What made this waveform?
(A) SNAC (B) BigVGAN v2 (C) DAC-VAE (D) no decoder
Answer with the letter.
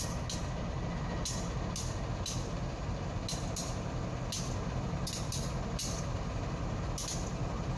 D